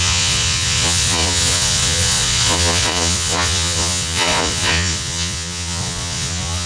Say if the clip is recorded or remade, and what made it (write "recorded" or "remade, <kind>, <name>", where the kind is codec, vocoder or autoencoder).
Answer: remade, vocoder, Vocos